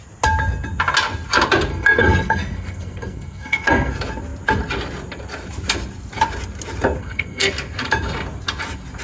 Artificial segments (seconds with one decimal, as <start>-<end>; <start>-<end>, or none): 1.7-3.9; 7.0-7.5